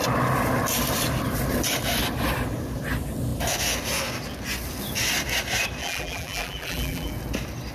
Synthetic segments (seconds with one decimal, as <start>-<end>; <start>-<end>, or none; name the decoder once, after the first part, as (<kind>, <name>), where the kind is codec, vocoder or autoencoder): 5.8-7.1 (vocoder, BigVGAN v2)